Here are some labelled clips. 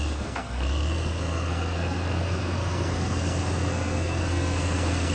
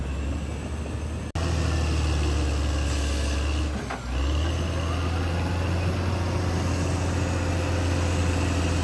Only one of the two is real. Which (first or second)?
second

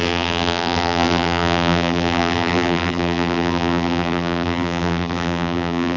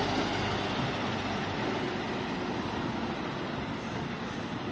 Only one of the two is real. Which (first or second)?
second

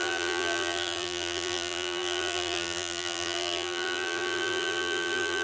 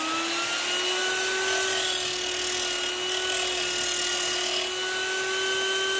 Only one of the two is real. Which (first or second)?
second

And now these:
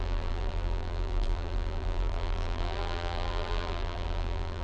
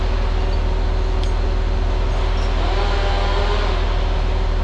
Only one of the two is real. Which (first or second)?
second